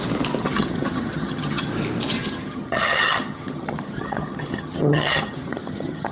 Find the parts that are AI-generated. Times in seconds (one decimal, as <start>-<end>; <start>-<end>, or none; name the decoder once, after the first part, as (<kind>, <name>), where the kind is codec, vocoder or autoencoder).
0.4-1.7 (vocoder, HiFi-GAN); 2.2-6.1